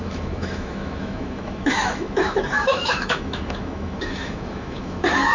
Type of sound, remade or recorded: remade